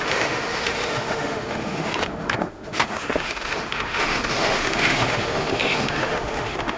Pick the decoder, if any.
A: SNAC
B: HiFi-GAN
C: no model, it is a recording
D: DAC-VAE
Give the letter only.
D